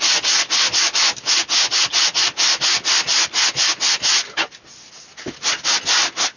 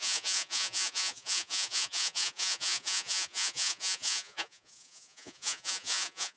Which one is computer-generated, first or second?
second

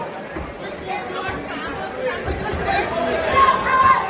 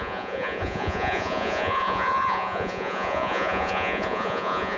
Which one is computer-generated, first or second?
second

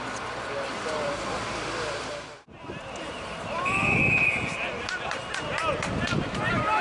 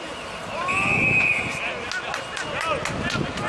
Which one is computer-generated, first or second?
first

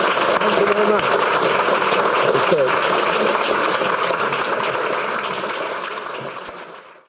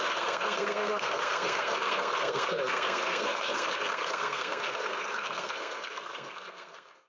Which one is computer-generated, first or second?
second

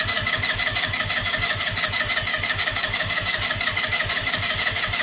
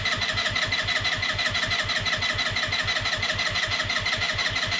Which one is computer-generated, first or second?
first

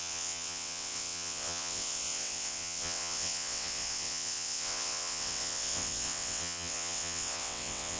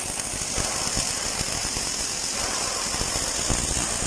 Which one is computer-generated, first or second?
first